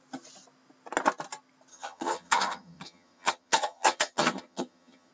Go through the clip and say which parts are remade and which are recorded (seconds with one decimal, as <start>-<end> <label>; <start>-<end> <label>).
0.0-1.7 recorded; 1.7-5.1 remade